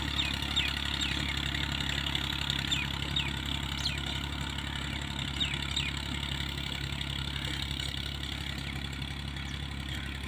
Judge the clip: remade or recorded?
recorded